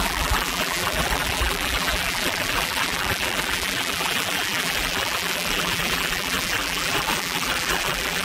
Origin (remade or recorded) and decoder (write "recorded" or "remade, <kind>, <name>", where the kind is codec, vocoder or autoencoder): remade, vocoder, BigVGAN v2